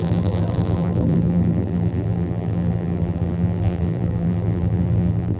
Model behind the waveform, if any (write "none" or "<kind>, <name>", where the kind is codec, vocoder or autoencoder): vocoder, BigVGAN v2